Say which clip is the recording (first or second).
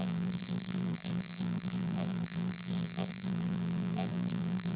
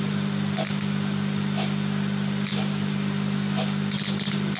second